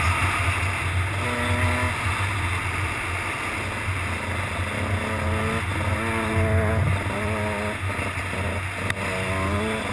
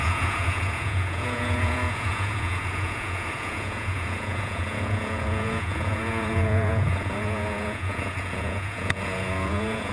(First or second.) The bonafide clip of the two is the first